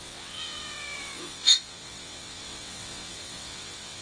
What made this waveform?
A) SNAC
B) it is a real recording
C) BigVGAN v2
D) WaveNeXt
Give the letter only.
D